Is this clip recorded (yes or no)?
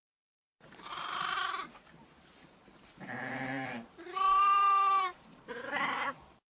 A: no